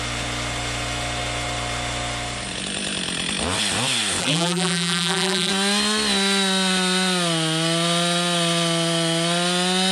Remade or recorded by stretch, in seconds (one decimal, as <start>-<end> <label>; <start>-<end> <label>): 0.0-4.2 recorded; 4.2-5.5 remade; 5.5-9.9 recorded